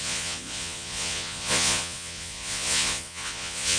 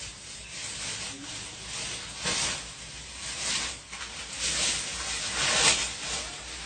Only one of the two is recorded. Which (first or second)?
second